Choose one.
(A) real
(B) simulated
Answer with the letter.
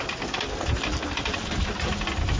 A